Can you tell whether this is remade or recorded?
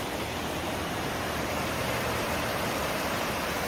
remade